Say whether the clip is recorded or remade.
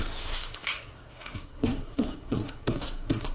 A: remade